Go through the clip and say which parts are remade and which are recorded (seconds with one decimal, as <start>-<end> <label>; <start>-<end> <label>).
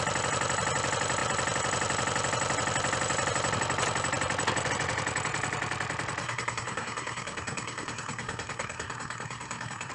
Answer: 0.0-6.2 recorded; 6.2-9.9 remade